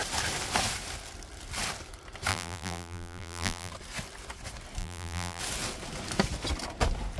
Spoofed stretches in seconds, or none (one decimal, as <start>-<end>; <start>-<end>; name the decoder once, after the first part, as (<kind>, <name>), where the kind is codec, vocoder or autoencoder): 2.3-3.7 (vocoder, BigVGAN v2); 4.8-5.4